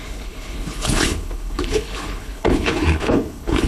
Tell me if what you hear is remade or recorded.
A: remade